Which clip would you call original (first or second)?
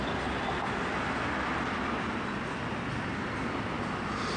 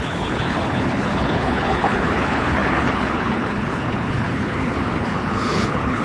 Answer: first